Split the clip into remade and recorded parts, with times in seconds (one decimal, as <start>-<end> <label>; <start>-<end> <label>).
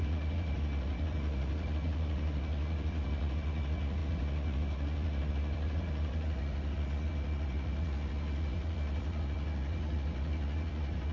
0.0-11.1 remade